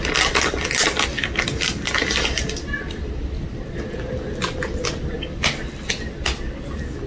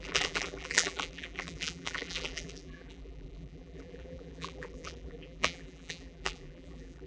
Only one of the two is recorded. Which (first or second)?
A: first